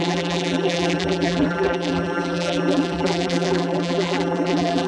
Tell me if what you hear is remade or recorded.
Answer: remade